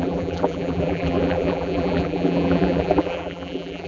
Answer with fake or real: fake